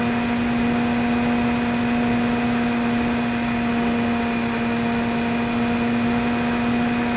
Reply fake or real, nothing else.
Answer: real